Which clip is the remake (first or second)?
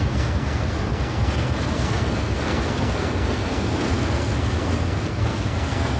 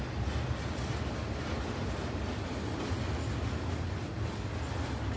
first